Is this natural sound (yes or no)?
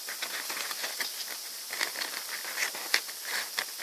yes